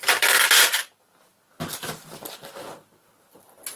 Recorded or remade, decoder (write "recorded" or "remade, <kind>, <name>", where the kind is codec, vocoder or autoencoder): recorded